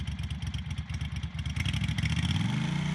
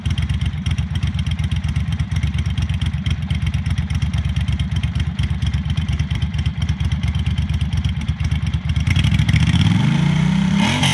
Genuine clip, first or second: first